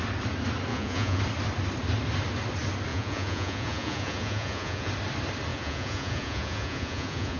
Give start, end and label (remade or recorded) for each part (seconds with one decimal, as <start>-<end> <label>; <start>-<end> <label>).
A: 0.0-0.7 recorded; 0.7-1.2 remade; 1.2-2.9 recorded; 2.9-4.9 remade; 4.9-5.5 recorded; 5.5-7.4 remade